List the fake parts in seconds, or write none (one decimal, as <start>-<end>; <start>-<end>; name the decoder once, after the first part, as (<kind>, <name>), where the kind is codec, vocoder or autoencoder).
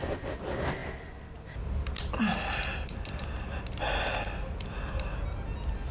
none